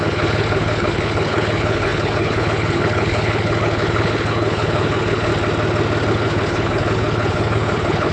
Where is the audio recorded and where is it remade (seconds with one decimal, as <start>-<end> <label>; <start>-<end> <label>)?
0.0-5.3 remade; 5.3-6.1 recorded; 6.1-8.1 remade